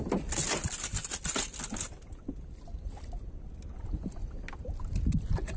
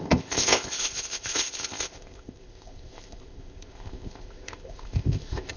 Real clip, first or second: first